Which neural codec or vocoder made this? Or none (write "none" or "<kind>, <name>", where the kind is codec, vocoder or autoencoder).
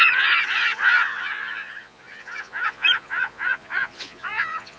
vocoder, Vocos